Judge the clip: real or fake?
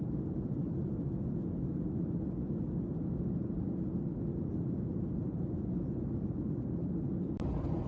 real